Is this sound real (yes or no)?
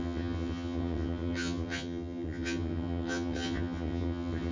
no